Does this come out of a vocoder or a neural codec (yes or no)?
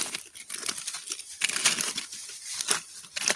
no